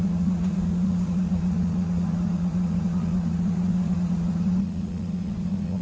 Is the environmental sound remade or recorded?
remade